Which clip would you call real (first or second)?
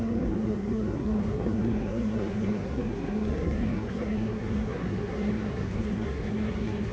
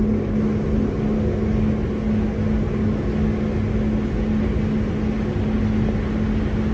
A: second